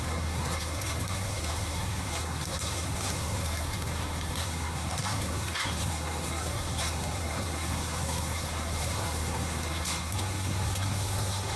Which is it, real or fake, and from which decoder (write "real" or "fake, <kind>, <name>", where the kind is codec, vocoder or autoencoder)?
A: fake, codec, SNAC